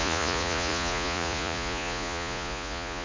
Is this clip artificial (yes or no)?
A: yes